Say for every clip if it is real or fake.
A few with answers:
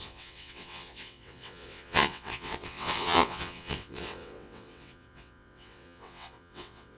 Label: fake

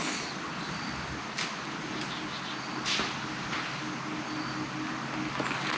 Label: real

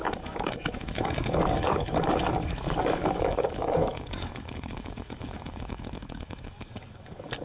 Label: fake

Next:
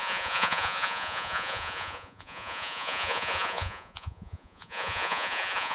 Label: fake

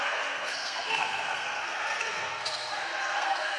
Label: fake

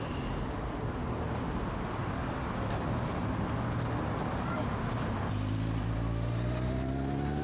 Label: real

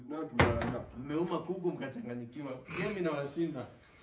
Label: fake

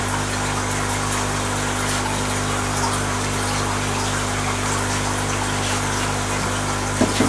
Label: real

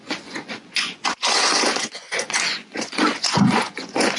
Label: fake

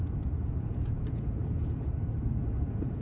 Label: fake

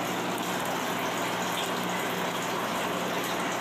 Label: real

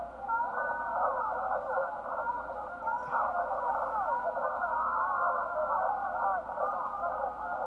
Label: real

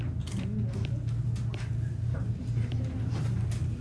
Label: real